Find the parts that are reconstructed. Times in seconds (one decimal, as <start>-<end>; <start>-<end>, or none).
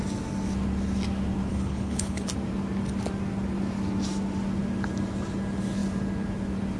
1.5-2.3